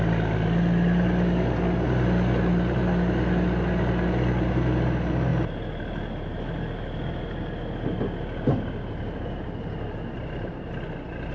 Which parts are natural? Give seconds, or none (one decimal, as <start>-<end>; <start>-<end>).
0.0-11.3